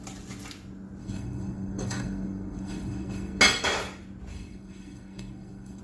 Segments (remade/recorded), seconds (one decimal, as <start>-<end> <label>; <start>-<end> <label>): 0.0-1.0 recorded; 1.0-3.4 remade; 3.4-4.3 recorded; 4.3-5.8 remade